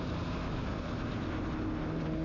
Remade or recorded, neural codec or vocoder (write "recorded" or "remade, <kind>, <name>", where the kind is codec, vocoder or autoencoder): recorded